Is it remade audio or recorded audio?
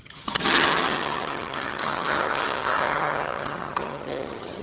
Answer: remade